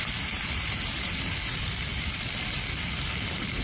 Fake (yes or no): no